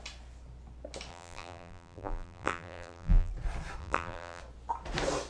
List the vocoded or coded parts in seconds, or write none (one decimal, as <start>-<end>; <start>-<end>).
1.1-3.3; 3.8-4.4

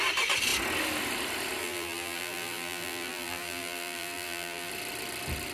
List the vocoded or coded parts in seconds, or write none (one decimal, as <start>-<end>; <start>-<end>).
1.6-4.7

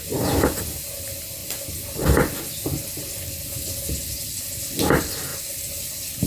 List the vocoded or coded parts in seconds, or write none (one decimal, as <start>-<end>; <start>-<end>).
none

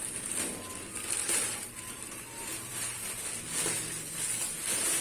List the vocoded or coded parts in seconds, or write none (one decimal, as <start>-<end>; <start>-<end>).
1.2-3.2

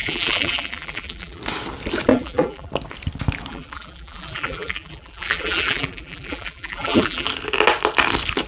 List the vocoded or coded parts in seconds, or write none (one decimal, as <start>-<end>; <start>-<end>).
0.0-1.4; 2.1-2.7; 3.5-7.3

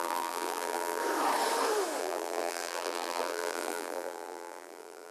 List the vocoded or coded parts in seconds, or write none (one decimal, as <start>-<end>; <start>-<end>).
0.0-1.0; 2.0-5.1

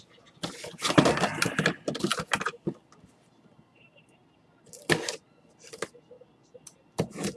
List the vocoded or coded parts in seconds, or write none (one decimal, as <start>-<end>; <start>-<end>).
0.0-2.1; 6.5-7.4

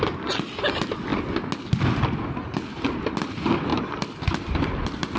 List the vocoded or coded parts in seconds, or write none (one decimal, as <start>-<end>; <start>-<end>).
3.7-5.2